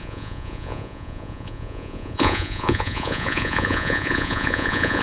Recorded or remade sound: remade